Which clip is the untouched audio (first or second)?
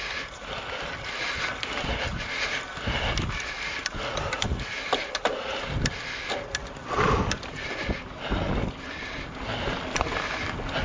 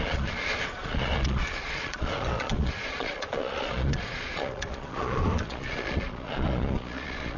first